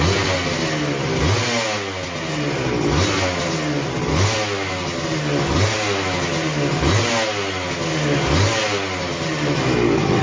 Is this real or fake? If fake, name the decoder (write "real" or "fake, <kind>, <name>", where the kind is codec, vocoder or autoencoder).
real